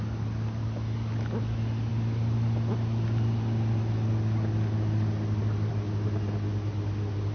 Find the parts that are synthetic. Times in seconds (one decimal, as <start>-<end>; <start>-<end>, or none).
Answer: none